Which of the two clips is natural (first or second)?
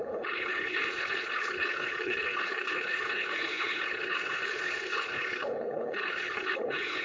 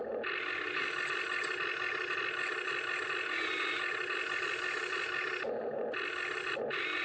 second